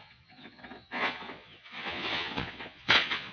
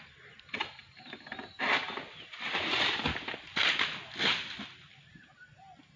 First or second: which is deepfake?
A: first